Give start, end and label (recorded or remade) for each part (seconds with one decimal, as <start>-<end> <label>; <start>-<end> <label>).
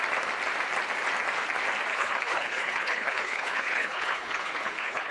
0.0-1.9 recorded; 1.9-5.1 remade